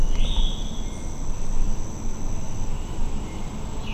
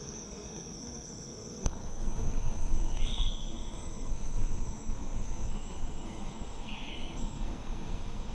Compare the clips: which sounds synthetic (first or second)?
second